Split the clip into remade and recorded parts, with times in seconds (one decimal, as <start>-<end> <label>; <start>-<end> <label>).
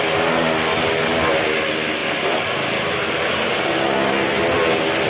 0.0-5.1 recorded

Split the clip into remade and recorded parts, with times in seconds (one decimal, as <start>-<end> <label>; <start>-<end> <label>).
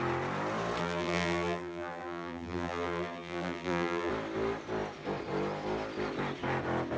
0.0-0.8 recorded; 0.8-4.1 remade; 4.1-7.0 recorded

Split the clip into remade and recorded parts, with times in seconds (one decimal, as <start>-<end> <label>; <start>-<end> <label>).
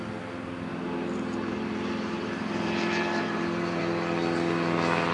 0.0-0.7 recorded; 0.7-3.8 remade; 3.8-5.1 recorded